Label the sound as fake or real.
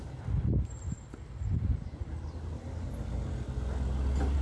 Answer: real